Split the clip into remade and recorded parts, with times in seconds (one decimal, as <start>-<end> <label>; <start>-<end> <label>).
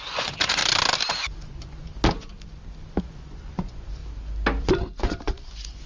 0.0-0.6 remade; 0.6-1.2 recorded; 1.2-1.9 remade; 1.9-3.0 recorded; 3.0-4.0 remade; 4.0-4.6 recorded; 4.6-5.9 remade